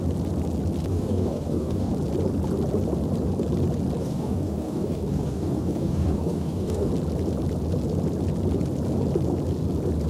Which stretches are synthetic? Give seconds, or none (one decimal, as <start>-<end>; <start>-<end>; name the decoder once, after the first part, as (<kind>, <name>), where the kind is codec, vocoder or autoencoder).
0.9-1.9 (codec, DAC); 4.0-6.9